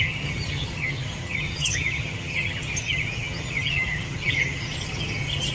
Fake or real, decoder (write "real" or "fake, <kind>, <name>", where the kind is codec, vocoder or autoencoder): fake, vocoder, HiFi-GAN